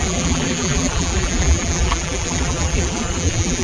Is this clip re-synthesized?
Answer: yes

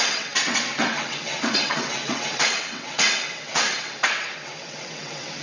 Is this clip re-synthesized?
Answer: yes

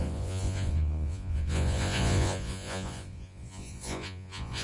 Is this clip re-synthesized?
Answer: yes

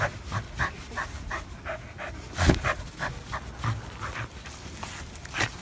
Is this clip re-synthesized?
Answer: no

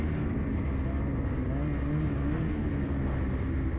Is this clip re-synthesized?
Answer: no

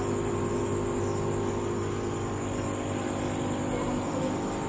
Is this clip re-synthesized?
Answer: no